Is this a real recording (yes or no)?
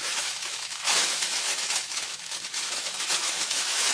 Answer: no